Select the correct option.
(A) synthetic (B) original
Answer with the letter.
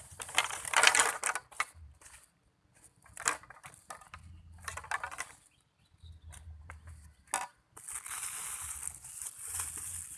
B